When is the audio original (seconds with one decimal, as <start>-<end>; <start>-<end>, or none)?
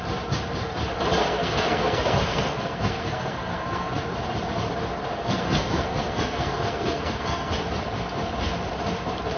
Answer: 0.0-1.2; 4.0-5.1; 7.5-9.4